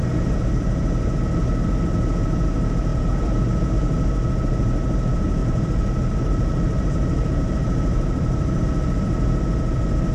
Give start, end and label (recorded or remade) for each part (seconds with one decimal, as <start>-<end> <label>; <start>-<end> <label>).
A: 0.0-5.4 recorded; 5.4-8.6 remade; 8.6-10.1 recorded